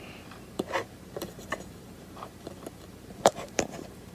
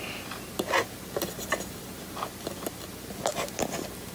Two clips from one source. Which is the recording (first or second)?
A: second